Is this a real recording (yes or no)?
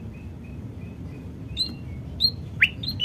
yes